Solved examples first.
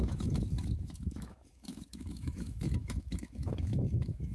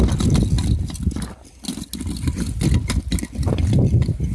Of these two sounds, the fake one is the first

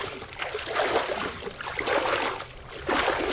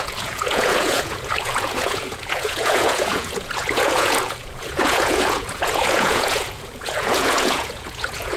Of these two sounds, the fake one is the second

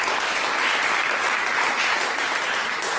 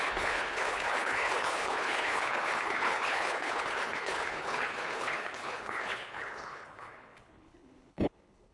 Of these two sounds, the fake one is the second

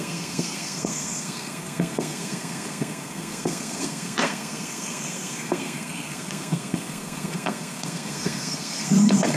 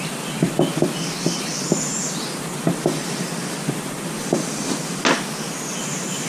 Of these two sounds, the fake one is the first